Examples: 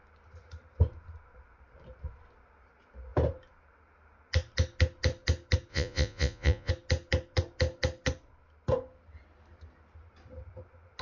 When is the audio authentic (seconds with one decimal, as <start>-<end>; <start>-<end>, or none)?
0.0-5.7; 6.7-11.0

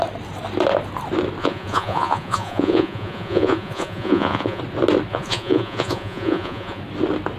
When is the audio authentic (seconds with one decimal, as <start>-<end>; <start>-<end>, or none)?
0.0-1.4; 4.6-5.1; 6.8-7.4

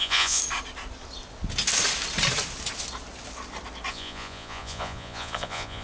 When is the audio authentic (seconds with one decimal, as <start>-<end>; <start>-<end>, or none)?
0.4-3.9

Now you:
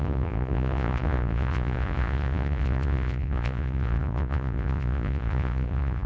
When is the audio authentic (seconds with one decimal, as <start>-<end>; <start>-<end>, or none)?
none